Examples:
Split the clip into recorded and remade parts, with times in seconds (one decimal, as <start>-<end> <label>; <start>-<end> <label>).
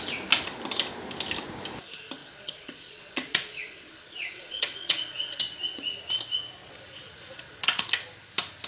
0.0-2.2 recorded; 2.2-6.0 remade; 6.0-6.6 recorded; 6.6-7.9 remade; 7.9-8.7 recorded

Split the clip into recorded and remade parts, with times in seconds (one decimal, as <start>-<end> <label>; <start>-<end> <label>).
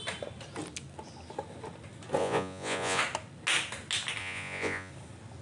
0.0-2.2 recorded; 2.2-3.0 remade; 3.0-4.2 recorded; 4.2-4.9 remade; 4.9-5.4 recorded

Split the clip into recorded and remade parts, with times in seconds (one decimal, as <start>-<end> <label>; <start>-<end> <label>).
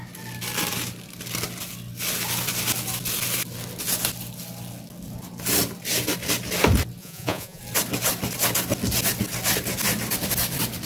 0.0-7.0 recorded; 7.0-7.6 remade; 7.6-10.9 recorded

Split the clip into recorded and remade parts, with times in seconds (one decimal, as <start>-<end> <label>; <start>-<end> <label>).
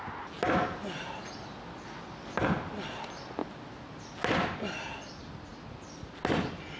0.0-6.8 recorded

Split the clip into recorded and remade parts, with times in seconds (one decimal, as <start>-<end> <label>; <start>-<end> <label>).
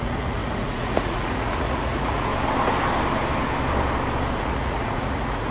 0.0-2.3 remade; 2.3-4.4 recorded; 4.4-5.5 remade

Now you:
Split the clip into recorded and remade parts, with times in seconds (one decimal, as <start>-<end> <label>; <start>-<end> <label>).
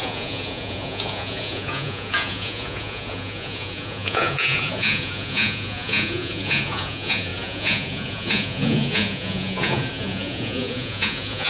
0.0-11.5 remade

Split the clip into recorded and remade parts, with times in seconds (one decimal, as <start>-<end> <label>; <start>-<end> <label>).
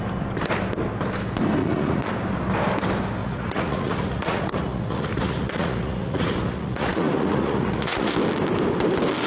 0.0-1.6 recorded; 1.6-2.1 remade; 2.1-3.2 recorded; 3.2-8.1 remade; 8.1-9.3 recorded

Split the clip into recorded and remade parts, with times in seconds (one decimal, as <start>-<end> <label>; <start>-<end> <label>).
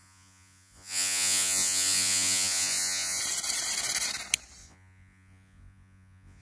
0.0-3.2 remade; 3.2-4.6 recorded; 4.6-6.4 remade